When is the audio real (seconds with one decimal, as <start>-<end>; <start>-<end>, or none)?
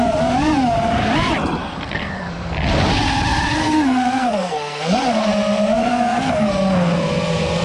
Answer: 0.0-1.6; 2.5-3.6; 5.3-5.8; 6.5-7.6